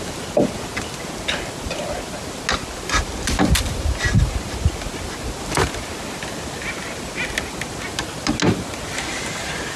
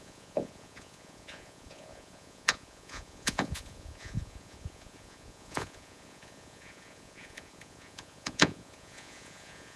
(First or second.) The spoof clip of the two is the second